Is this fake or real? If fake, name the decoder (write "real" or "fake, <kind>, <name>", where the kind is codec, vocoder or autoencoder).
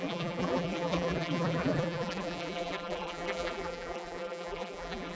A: fake, vocoder, BigVGAN v2